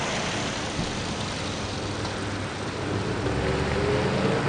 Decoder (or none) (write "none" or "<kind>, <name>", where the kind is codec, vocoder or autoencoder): none